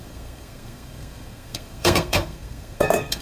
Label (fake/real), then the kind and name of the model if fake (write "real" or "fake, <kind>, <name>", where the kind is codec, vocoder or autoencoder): fake, codec, SNAC